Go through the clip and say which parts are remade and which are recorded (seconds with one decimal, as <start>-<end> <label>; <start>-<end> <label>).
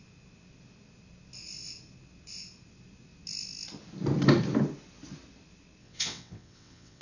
0.0-5.8 recorded; 5.8-7.0 remade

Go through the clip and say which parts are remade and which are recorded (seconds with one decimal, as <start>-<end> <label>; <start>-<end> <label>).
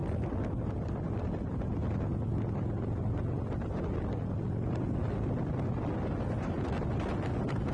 0.0-7.7 recorded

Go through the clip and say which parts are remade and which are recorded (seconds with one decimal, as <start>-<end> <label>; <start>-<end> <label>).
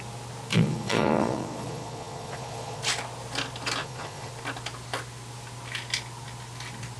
0.0-0.5 recorded; 0.5-2.8 remade; 2.8-3.8 recorded; 3.8-4.3 remade; 4.3-7.0 recorded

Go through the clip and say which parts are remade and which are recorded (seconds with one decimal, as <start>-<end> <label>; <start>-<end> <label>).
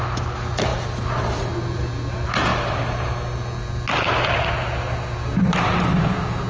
0.0-6.5 recorded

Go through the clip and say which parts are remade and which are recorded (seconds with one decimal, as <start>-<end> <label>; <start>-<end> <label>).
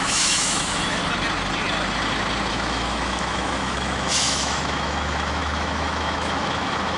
0.0-1.0 remade; 1.0-2.5 recorded; 2.5-7.0 remade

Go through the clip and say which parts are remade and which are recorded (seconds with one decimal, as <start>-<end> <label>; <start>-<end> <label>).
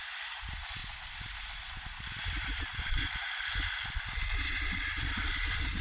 0.0-0.8 recorded; 0.8-3.1 remade; 3.1-5.8 recorded